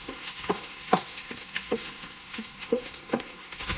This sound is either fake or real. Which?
fake